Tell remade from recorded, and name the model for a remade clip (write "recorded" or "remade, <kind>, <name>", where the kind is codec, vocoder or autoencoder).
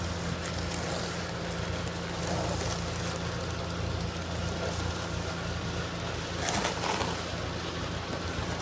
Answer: recorded